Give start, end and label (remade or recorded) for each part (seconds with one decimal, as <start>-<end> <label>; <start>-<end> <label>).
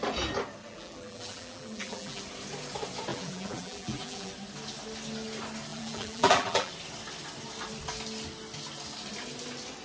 0.0-0.6 recorded; 0.6-2.2 remade; 2.2-3.1 recorded; 3.1-4.3 remade; 4.3-5.7 recorded; 5.7-6.7 remade; 6.7-9.8 recorded